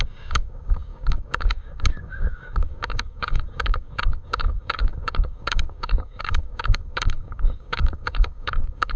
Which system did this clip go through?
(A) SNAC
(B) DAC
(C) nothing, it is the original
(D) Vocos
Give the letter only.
B